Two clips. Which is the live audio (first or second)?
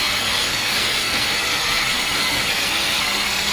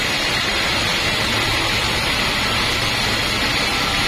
second